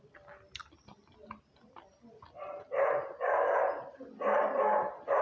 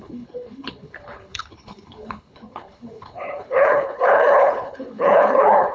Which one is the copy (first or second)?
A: second